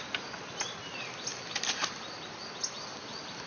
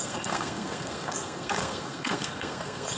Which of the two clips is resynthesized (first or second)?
second